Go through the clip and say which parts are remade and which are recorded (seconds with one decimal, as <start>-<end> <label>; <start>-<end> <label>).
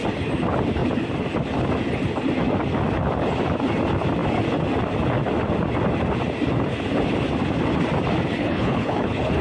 0.0-8.4 recorded; 8.4-9.4 remade